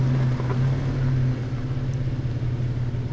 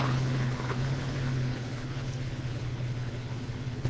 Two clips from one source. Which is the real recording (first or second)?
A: first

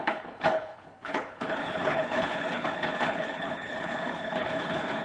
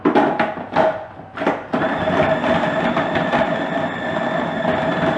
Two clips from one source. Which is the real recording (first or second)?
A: second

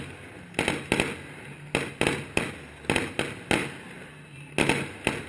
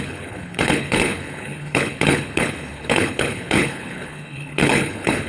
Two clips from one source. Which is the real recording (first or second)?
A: first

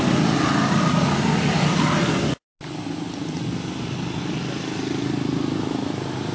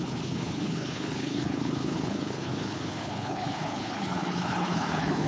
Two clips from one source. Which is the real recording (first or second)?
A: first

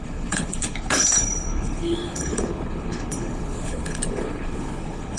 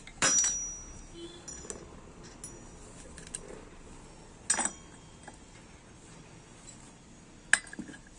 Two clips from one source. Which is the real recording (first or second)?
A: second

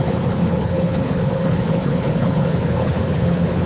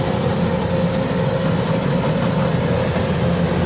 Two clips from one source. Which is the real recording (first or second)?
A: second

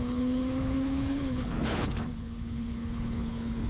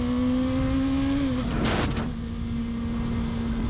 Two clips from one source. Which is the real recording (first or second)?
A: second